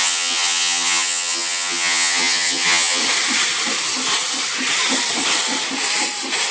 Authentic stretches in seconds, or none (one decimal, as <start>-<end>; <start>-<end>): 3.0-6.5